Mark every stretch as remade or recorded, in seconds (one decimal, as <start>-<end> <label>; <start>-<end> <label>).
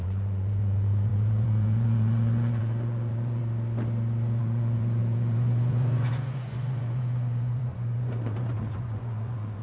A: 0.0-3.4 remade; 3.4-4.4 recorded; 4.4-9.6 remade